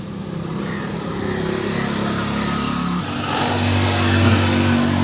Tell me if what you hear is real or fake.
real